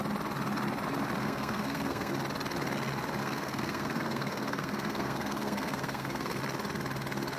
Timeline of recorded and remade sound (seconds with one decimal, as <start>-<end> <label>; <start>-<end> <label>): 0.0-1.2 recorded; 1.2-2.1 remade; 2.1-3.2 recorded; 3.2-6.4 remade; 6.4-7.4 recorded